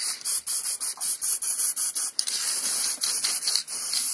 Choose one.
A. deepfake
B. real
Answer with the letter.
A